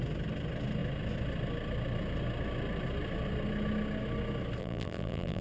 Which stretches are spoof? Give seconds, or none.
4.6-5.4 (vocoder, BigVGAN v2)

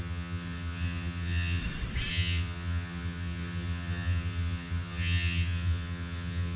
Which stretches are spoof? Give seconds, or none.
0.0-1.6 (vocoder, HiFi-GAN); 2.1-6.6

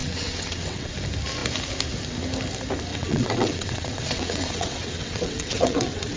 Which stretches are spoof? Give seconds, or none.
0.0-0.9 (vocoder, WaveNeXt); 2.9-6.2